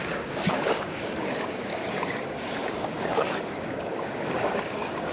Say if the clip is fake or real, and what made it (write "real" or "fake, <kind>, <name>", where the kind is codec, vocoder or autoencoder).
fake, codec, DAC